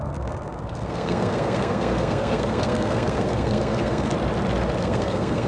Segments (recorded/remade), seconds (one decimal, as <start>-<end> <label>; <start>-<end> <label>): 0.0-4.1 remade; 4.1-4.8 recorded; 4.8-5.5 remade